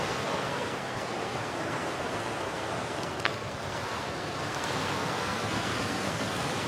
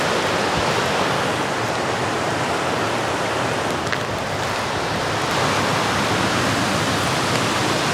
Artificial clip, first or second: first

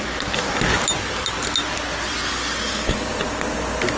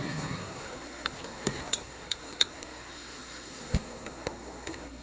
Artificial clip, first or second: second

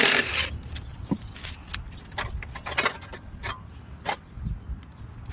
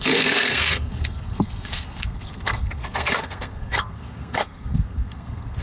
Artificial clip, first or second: second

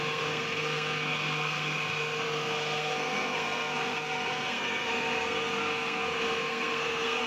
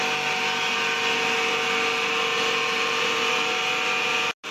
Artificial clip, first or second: first